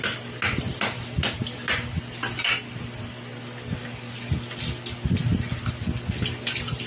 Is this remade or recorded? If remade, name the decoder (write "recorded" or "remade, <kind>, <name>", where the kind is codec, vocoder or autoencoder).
recorded